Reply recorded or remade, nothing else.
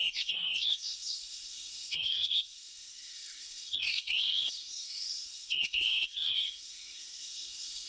remade